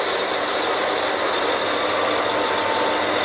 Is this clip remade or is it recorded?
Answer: remade